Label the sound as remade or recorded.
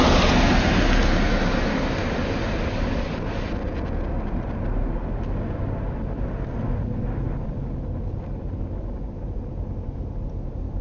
recorded